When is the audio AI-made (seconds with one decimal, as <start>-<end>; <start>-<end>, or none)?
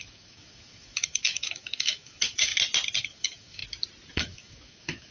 0.0-2.5; 3.0-3.6; 4.1-5.1